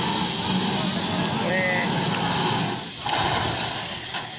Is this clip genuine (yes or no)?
yes